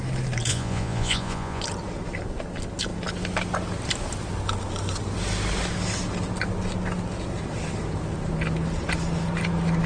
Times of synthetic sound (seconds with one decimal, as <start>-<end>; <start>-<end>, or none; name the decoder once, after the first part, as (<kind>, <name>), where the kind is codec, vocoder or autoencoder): 0.5-1.6 (vocoder, Vocos)